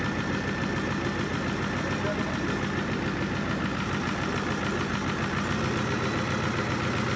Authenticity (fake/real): real